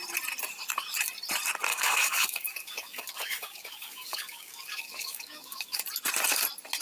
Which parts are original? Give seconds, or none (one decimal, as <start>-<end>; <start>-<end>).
0.0-1.7; 5.8-6.8